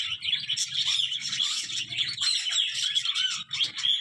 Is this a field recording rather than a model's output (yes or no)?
yes